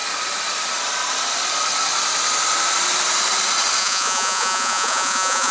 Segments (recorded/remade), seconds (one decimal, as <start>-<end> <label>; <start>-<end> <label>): 0.0-3.8 recorded; 3.8-5.5 remade